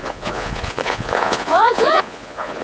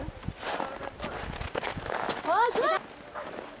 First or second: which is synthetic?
first